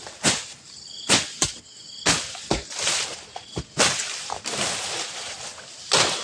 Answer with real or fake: real